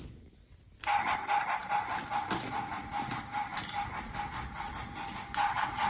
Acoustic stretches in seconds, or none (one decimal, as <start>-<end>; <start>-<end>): 0.0-1.6; 5.1-5.9